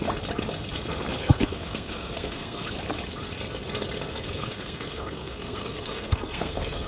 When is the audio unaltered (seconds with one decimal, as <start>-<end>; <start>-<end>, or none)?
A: 0.0-1.2; 2.7-4.1